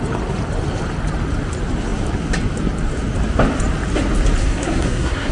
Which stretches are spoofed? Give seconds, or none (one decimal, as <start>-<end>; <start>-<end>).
4.4-5.3